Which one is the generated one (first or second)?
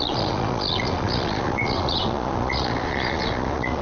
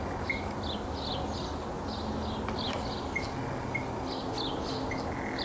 first